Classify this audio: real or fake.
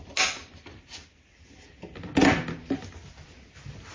real